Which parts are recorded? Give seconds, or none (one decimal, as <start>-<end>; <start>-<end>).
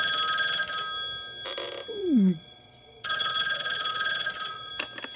0.0-2.0; 4.7-5.2